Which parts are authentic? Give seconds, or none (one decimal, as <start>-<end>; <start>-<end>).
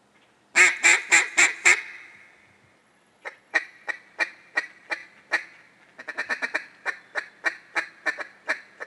0.0-2.8; 3.9-8.9